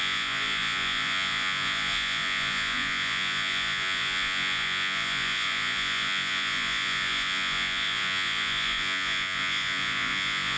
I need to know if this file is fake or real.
fake